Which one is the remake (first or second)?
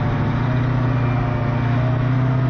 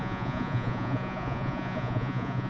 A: second